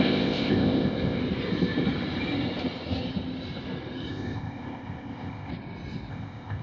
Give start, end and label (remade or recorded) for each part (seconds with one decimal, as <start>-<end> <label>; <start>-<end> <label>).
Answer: 0.0-1.2 remade; 1.2-4.1 recorded; 4.1-5.5 remade; 5.5-6.1 recorded; 6.1-6.6 remade